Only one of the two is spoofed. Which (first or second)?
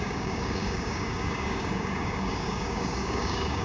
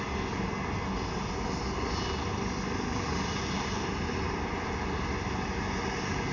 first